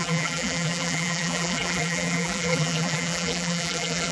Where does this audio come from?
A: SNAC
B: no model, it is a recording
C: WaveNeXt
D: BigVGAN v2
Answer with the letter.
D